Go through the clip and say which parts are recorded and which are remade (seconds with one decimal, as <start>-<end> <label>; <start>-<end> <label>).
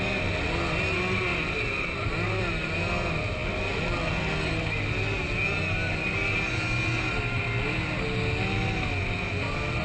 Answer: 0.0-9.8 recorded